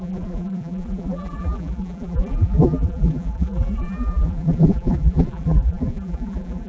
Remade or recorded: remade